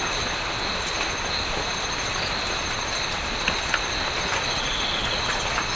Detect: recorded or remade recorded